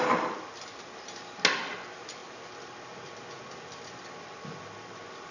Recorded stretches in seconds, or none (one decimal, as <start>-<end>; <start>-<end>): 0.0-5.3